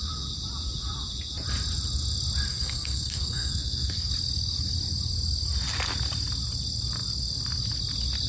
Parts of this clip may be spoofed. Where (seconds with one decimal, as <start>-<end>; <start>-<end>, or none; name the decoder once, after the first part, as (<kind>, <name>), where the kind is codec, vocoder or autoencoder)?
2.5-4.1 (codec, SNAC)